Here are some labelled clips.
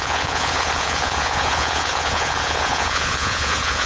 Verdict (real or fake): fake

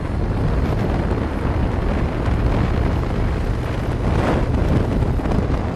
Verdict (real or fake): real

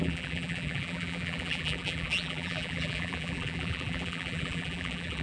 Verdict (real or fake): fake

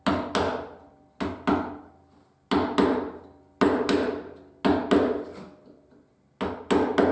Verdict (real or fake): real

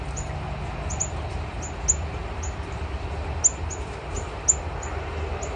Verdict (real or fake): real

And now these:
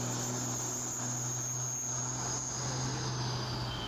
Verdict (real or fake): real